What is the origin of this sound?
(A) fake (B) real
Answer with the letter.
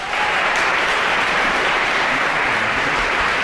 A